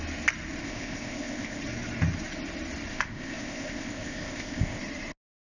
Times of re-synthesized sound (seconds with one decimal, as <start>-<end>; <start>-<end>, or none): 0.6-1.6; 2.9-4.8